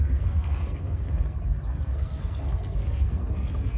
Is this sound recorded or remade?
remade